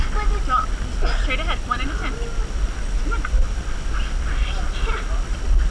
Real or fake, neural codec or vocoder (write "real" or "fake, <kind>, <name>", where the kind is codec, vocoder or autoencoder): real